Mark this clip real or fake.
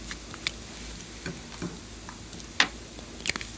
real